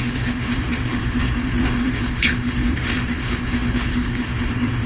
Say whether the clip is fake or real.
fake